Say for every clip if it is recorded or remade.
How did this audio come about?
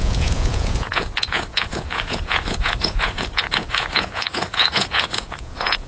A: remade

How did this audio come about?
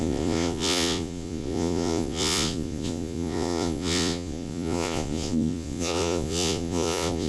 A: remade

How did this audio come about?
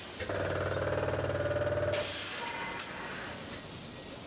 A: recorded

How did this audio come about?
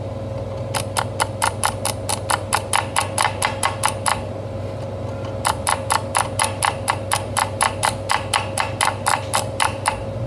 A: recorded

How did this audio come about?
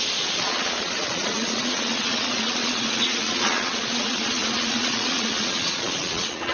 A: remade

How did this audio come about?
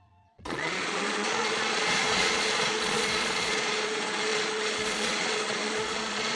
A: remade